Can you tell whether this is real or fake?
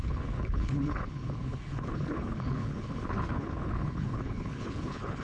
fake